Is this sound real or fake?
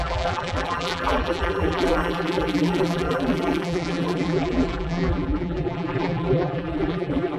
fake